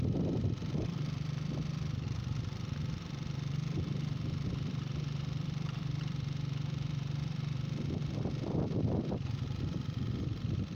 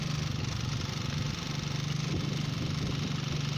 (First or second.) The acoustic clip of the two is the second